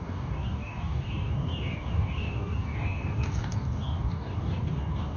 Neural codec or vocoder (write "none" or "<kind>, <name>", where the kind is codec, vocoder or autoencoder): codec, DAC